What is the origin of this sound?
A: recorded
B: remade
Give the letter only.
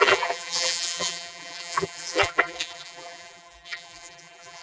B